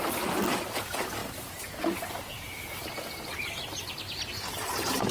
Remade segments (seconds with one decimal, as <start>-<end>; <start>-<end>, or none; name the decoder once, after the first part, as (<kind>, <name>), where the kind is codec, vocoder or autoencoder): none